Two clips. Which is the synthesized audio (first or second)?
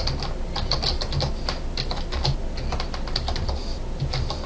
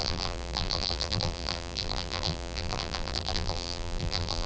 second